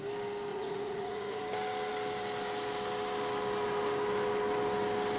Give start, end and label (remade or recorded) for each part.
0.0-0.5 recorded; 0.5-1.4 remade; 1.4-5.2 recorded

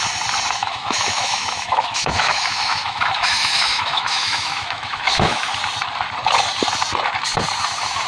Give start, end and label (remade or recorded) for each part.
0.0-0.6 recorded; 0.6-5.5 remade; 5.5-8.1 recorded

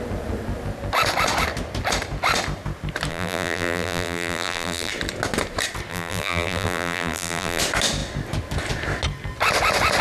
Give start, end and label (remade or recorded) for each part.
0.0-3.1 recorded; 3.1-4.9 remade; 4.9-5.9 recorded; 5.9-7.6 remade; 7.6-10.0 recorded